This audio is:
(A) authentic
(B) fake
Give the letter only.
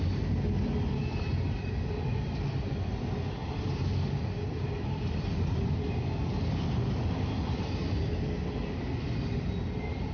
A